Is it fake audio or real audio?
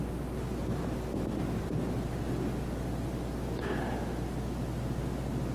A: real